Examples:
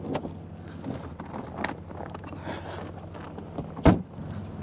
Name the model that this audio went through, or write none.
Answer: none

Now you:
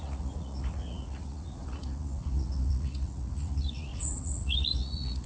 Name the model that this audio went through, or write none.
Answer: vocoder, Vocos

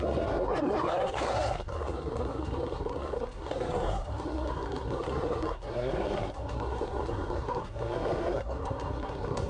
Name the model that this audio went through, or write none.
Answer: codec, SNAC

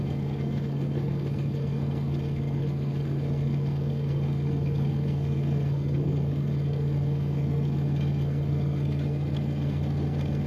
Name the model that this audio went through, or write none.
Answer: codec, SNAC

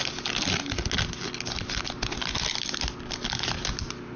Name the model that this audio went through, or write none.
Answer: none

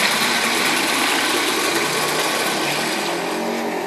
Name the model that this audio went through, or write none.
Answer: none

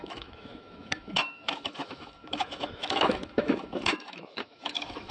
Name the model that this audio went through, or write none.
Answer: autoencoder, DAC-VAE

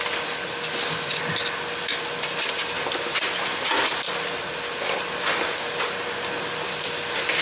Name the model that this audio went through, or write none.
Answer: none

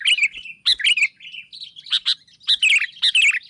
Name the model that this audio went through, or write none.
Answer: none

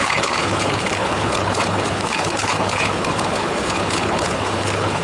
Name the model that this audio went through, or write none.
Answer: codec, HILCodec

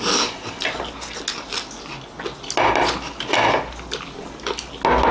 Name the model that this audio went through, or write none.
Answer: none